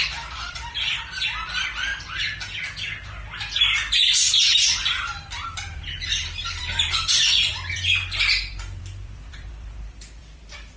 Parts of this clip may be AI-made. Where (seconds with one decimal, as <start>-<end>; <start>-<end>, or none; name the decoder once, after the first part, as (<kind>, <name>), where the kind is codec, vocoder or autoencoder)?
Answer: 0.0-1.9 (vocoder, BigVGAN v2); 4.9-10.8